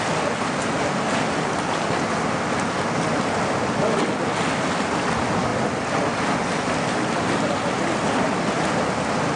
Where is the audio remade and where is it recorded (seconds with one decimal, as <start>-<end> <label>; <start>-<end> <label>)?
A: 0.0-9.4 recorded